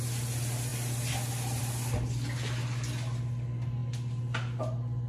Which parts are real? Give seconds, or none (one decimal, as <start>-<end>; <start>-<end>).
0.0-5.1

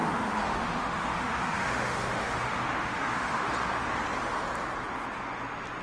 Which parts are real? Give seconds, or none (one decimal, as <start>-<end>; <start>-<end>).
3.5-5.8

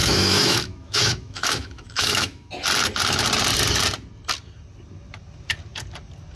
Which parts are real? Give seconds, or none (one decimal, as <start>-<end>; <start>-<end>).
2.5-6.4

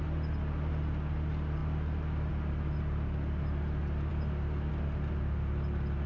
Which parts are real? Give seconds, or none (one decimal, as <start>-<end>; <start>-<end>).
0.0-6.1

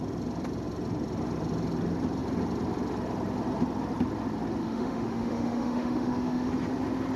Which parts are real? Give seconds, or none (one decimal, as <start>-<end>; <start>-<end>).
0.0-4.6; 6.5-7.2